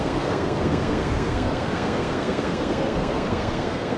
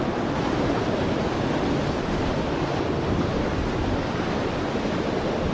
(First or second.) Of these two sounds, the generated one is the first